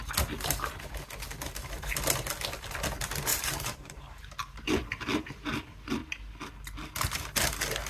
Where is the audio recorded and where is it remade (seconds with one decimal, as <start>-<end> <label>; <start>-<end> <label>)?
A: 0.0-3.3 recorded; 3.3-4.0 remade; 4.0-7.9 recorded